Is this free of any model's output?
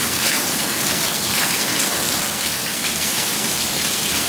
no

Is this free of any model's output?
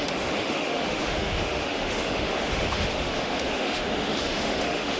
no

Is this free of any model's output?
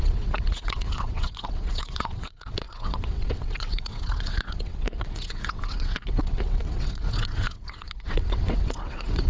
no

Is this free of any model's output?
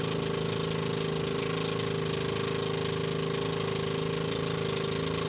yes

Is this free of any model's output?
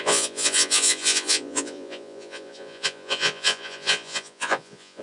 no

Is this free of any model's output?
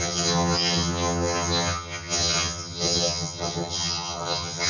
no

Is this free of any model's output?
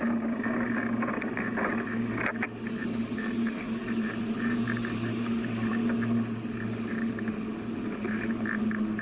yes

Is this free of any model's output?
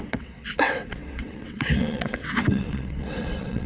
no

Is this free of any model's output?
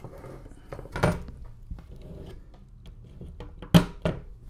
yes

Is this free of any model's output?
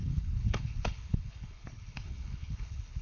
no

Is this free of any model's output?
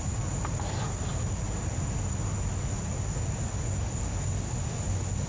yes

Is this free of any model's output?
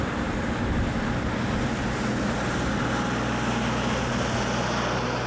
yes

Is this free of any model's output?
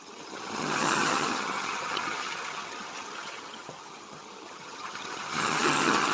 no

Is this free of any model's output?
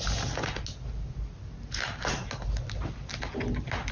yes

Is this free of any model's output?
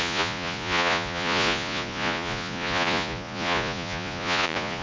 no